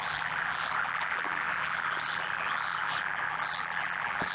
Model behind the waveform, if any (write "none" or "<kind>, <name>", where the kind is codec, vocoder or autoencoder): vocoder, BigVGAN v2